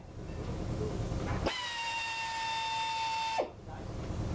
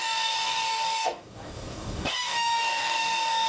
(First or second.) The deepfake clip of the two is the second